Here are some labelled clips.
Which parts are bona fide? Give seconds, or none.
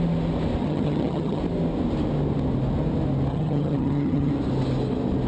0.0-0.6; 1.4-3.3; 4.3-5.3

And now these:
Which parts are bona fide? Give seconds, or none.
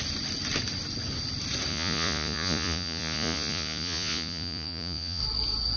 0.0-1.7; 5.2-5.8